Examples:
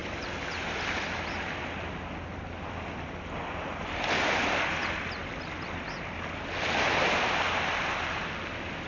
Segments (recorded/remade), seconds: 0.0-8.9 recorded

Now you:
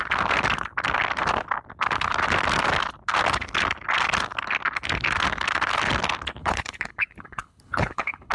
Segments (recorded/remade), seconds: 0.0-6.4 recorded; 6.4-8.3 remade

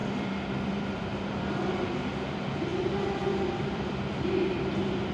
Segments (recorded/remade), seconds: 0.0-1.5 remade; 1.5-2.7 recorded; 2.7-4.2 remade; 4.2-5.1 recorded

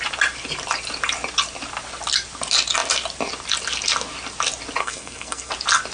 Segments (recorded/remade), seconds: 0.0-4.8 recorded; 4.8-5.5 remade; 5.5-5.9 recorded

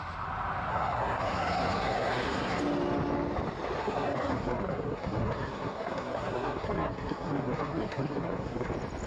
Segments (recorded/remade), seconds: 0.0-0.7 recorded; 0.7-2.6 remade; 2.6-3.8 recorded; 3.8-8.7 remade; 8.7-9.1 recorded

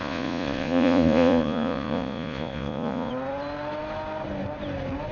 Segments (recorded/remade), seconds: 0.0-3.1 remade; 3.1-5.1 recorded

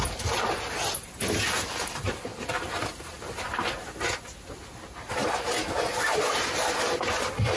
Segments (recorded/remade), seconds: 0.0-7.6 recorded

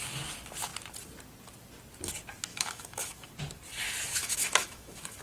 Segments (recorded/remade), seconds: 0.0-2.5 recorded; 2.5-3.3 remade; 3.3-4.2 recorded; 4.2-5.2 remade